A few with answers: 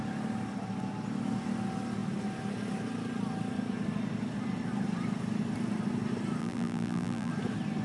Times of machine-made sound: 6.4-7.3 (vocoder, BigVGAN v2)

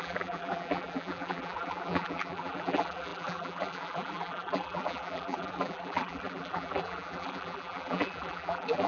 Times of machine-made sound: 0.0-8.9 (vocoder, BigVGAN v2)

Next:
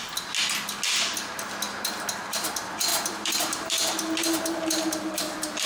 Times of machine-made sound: 2.9-5.7 (vocoder, BigVGAN v2)

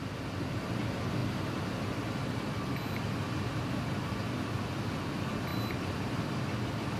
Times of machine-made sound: 1.2-4.8 (vocoder, BigVGAN v2); 5.5-6.4